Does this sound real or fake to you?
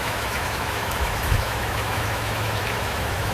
fake